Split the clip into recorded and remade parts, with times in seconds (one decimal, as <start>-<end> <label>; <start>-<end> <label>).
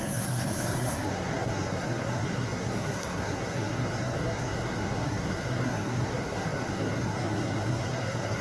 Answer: 0.0-8.4 remade